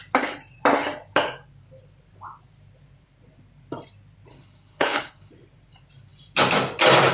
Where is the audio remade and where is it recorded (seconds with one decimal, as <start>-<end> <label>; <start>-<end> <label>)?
0.0-4.3 recorded; 4.3-5.3 remade; 5.3-7.1 recorded